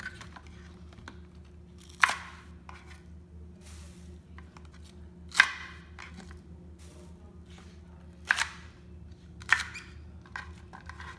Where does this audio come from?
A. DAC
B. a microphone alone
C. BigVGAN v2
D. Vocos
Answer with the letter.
B